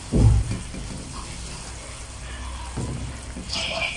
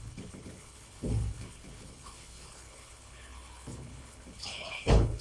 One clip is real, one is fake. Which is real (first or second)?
first